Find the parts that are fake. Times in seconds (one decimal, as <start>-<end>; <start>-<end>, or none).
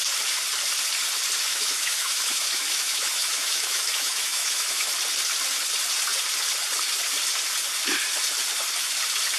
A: 1.5-4.9